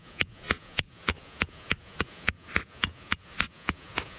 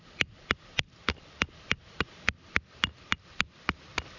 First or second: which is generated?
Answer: first